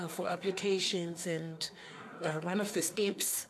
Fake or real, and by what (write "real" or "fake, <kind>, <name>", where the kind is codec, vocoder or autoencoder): fake, codec, SNAC